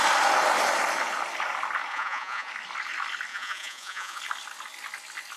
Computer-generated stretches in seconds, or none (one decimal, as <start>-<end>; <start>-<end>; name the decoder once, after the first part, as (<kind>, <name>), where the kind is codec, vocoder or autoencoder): 1.9-2.5 (vocoder, Vocos); 3.3-4.2